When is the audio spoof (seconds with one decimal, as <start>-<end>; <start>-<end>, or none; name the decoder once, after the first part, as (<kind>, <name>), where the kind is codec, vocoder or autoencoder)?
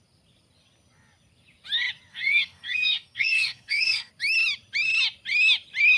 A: 2.1-4.1 (codec, SNAC)